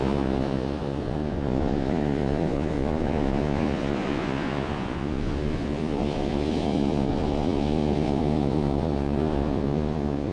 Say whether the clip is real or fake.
fake